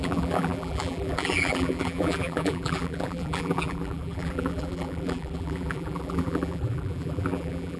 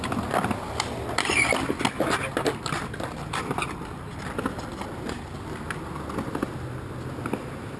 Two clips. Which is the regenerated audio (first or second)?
first